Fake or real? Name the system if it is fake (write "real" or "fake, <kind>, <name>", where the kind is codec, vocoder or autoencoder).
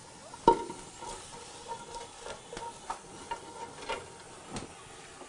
real